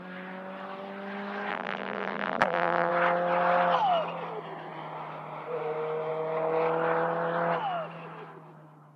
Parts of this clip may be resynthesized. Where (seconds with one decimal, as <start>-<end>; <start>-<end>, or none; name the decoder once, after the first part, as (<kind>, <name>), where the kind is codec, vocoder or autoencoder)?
1.5-2.9 (vocoder, BigVGAN v2)